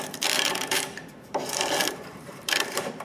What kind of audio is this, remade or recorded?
remade